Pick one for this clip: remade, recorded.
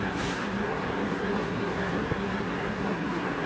remade